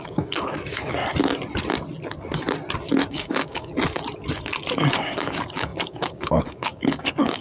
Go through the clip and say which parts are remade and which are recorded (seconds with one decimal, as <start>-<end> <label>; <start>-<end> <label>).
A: 0.0-1.0 remade; 1.0-3.1 recorded; 3.1-3.7 remade; 3.7-4.9 recorded; 4.9-7.4 remade